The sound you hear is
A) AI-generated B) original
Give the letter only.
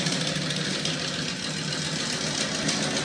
B